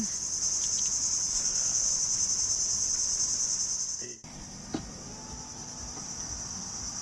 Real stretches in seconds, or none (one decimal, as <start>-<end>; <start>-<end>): 0.0-1.3; 1.9-7.0